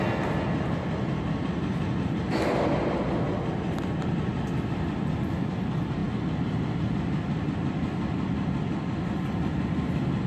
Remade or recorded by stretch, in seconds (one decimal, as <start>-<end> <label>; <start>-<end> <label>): 0.0-10.3 recorded